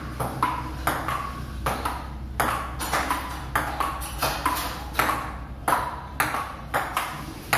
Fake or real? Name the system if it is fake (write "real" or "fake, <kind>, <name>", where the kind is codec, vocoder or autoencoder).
real